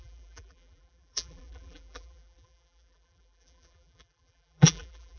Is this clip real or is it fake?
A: fake